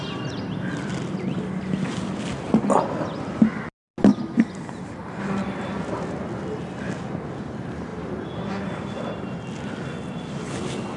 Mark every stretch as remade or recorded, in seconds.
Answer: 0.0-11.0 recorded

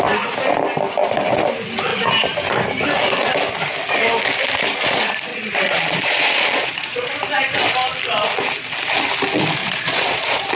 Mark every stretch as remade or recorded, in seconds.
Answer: 0.0-5.3 recorded; 5.3-7.1 remade; 7.1-9.6 recorded; 9.6-10.5 remade

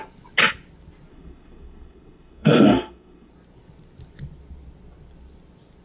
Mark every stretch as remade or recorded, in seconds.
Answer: 0.0-1.1 recorded; 1.1-3.3 remade; 3.3-5.8 recorded

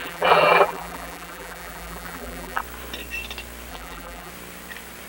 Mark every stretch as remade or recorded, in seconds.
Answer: 0.0-2.6 remade; 2.6-3.7 recorded; 3.7-4.3 remade; 4.3-5.1 recorded

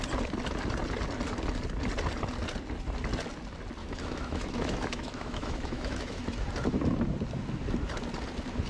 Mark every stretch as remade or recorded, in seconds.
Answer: 0.0-3.8 recorded; 3.8-6.2 remade; 6.2-8.7 recorded

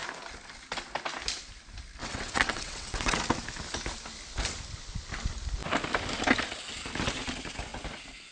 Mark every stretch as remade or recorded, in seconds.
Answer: 0.0-2.0 recorded; 2.0-3.2 remade; 3.2-8.3 recorded

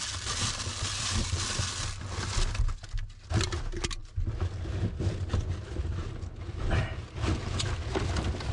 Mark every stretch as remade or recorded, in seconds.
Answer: 0.0-8.5 recorded

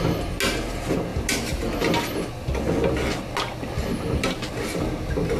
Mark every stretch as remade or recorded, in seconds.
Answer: 0.0-5.4 recorded